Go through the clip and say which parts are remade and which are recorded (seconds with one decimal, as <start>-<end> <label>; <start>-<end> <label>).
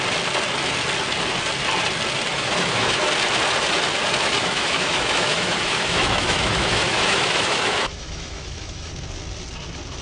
0.0-2.3 recorded; 2.3-3.0 remade; 3.0-4.4 recorded; 4.4-8.9 remade; 8.9-10.0 recorded